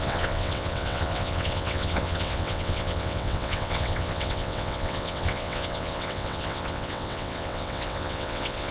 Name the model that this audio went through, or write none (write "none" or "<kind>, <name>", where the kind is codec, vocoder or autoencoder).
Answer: vocoder, WaveNeXt